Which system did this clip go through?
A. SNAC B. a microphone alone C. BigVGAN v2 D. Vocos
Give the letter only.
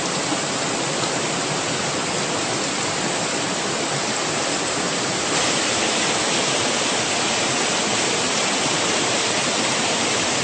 B